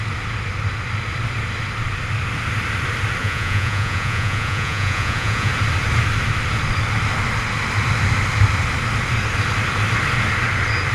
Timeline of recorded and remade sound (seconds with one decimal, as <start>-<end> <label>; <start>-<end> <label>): 0.0-3.2 recorded; 3.2-5.5 remade; 5.5-10.9 recorded